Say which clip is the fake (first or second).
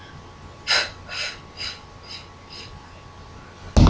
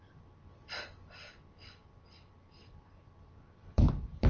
second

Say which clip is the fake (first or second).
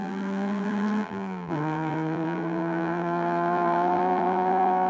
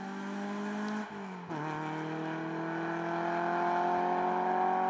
first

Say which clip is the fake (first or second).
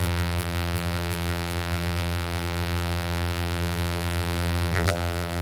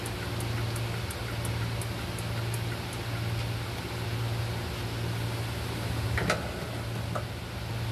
first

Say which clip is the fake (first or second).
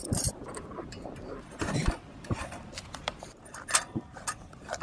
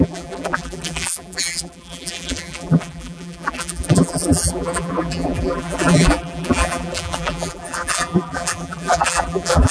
second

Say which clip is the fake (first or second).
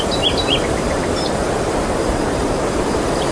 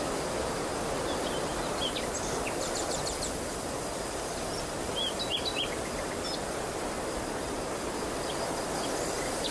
first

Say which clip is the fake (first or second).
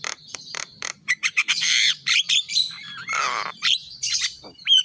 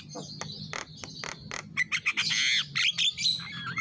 first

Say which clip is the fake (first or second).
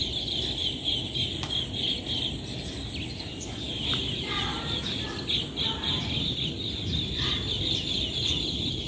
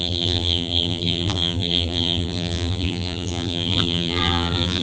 second